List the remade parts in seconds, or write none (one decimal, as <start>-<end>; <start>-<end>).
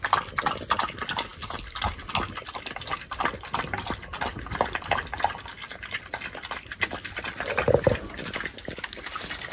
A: 4.1-5.2